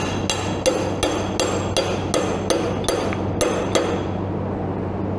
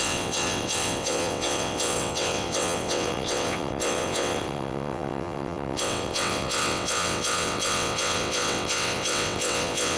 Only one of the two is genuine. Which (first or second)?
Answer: first